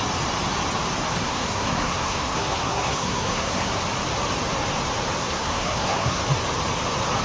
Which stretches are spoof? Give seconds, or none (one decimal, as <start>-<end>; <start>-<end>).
1.2-3.8; 5.2-6.2